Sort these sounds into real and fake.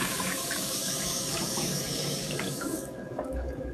fake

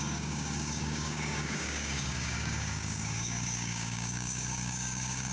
fake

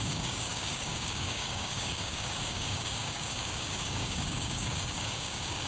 fake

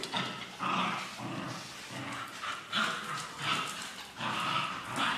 real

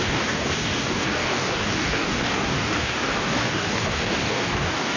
fake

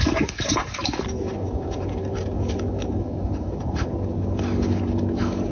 fake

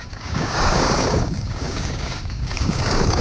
fake